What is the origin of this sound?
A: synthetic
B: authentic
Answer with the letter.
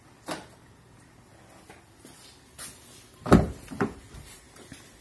B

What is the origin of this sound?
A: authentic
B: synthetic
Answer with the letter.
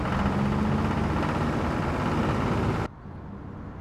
A